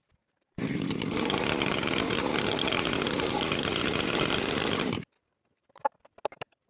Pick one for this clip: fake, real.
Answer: real